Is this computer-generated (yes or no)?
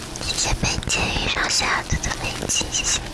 no